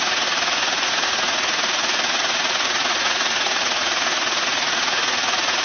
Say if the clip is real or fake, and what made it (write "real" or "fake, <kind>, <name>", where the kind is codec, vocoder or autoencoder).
fake, vocoder, Vocos